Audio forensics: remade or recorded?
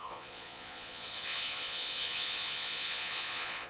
remade